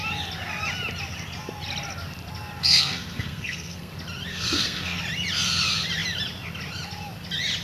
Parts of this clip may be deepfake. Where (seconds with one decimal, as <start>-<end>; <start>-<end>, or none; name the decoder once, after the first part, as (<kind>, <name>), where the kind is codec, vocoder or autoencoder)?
2.6-3.9 (codec, SNAC); 4.3-5.0